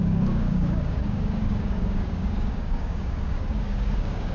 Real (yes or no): no